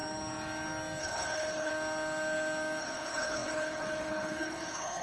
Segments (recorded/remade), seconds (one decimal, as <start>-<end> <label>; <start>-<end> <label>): 0.0-1.0 recorded; 1.0-1.7 remade; 1.7-2.8 recorded; 2.8-5.0 remade